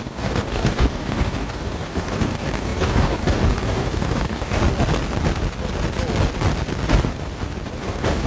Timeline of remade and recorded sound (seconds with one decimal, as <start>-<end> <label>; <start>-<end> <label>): 0.0-4.6 remade; 4.6-7.8 recorded; 7.8-8.3 remade